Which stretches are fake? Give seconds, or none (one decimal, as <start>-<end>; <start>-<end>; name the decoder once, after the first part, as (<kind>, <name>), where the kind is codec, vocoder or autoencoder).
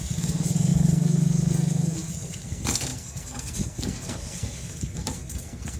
0.0-5.8 (codec, SNAC)